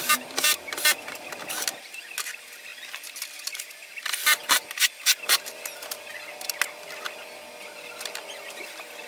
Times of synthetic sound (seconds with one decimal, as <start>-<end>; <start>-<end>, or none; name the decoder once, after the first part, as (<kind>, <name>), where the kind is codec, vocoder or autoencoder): none